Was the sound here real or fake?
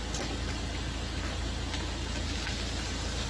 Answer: real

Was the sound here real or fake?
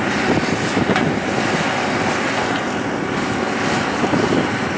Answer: real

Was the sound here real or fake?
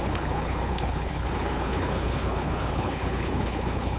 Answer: fake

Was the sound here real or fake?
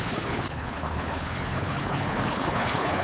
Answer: fake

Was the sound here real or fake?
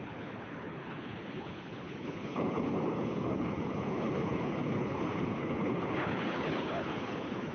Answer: fake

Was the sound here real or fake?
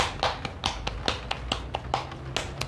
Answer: real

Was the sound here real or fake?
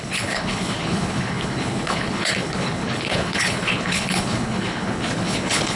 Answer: fake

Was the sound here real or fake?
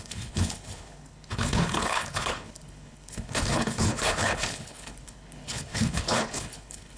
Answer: fake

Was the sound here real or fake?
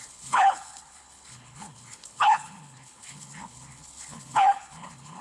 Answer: fake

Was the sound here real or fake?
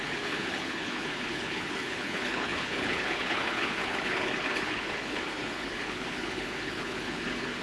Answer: fake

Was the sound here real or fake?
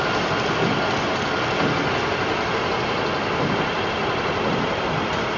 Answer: real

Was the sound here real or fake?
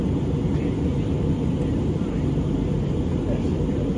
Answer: real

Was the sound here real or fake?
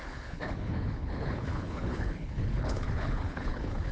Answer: fake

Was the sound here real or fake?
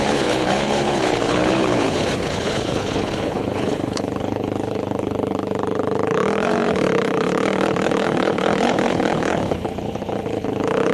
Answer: fake